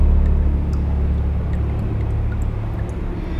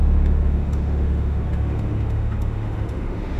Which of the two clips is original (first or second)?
first